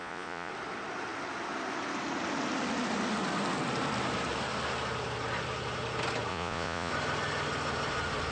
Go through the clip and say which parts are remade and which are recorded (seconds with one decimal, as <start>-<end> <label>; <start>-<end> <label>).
0.0-0.5 remade; 0.5-6.3 recorded; 6.3-6.9 remade; 6.9-8.3 recorded